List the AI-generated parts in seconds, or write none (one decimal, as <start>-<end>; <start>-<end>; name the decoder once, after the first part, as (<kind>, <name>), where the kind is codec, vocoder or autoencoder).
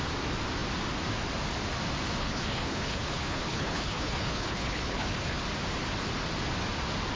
2.2-5.4 (codec, HILCodec)